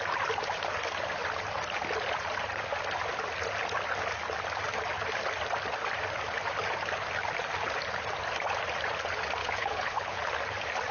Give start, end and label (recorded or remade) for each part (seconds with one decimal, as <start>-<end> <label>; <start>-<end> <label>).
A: 0.0-9.4 recorded; 9.4-10.2 remade; 10.2-10.9 recorded